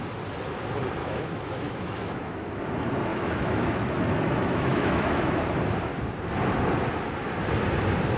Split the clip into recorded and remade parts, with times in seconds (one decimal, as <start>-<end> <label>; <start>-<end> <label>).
0.0-1.0 recorded; 1.0-2.6 remade; 2.6-3.1 recorded; 3.1-5.4 remade; 5.4-8.2 recorded